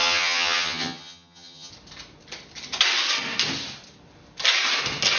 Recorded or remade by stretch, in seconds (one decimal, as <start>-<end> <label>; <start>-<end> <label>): 0.0-1.7 remade; 1.7-5.2 recorded